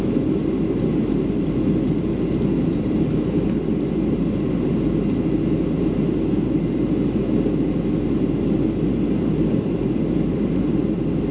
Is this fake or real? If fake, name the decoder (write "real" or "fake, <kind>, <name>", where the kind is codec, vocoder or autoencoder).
real